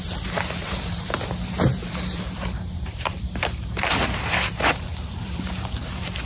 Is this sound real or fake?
fake